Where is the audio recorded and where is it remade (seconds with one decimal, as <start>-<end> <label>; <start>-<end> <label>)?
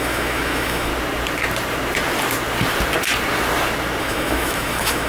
0.0-0.9 remade; 0.9-4.0 recorded; 4.0-5.1 remade